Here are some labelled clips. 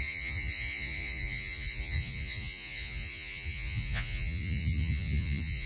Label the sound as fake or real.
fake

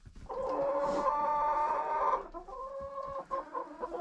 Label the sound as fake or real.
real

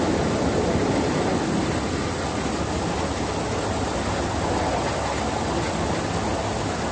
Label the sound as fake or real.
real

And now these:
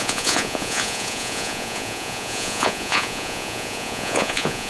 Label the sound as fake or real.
fake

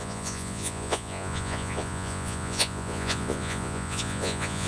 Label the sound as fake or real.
fake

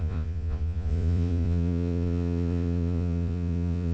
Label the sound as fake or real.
fake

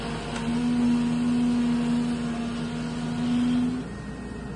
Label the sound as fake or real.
real